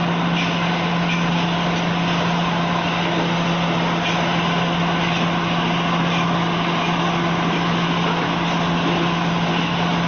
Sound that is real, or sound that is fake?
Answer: real